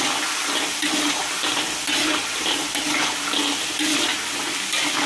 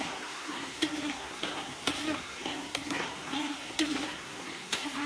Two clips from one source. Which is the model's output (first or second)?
second